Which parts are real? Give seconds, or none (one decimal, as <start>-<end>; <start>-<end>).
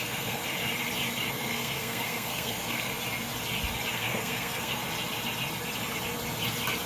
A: 0.4-1.3; 2.9-3.9; 4.8-6.9